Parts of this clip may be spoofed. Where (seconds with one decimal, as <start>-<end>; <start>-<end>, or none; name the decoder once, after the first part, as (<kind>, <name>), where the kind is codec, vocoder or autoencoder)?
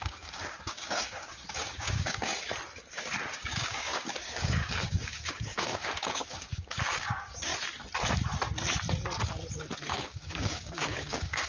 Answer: 0.0-2.3 (codec, DAC); 3.3-7.5; 9.9-11.5